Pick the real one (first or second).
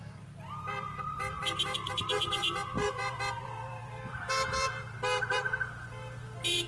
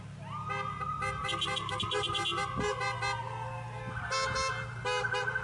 second